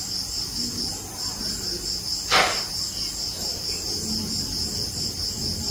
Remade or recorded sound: recorded